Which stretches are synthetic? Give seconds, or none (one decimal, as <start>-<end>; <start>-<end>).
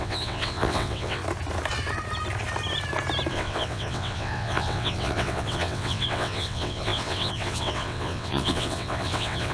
0.0-1.2; 3.3-9.5